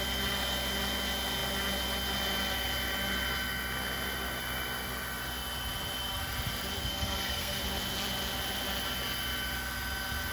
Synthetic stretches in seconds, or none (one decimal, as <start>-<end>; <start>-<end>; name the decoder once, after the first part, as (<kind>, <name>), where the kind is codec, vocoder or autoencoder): 6.8-7.6 (codec, SNAC)